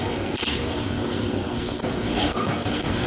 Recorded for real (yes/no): no